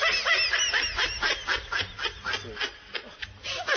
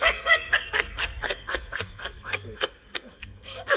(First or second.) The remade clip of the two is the second